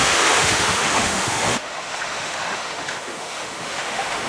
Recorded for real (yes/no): no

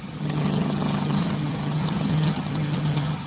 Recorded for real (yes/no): no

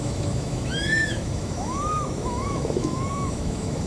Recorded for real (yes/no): no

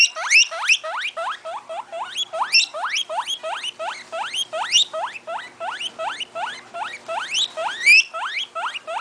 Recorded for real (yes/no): yes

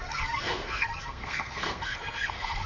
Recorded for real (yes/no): no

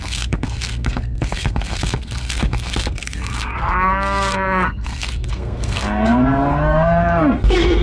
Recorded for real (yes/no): no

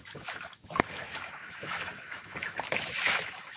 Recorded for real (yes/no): no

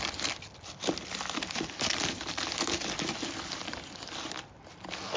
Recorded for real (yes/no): yes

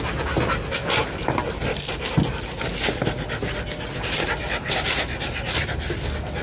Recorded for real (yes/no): yes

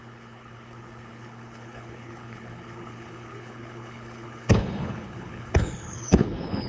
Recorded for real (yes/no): no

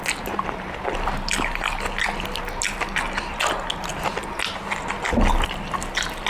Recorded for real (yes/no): yes